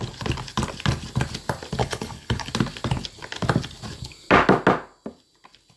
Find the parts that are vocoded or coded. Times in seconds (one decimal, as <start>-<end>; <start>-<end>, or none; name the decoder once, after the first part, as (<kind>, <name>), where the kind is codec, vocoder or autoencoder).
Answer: 1.8-2.5 (codec, HILCodec)